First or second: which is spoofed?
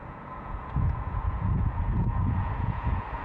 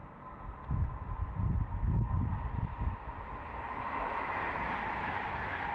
first